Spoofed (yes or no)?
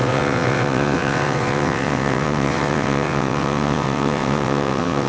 yes